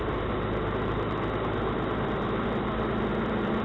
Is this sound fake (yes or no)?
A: no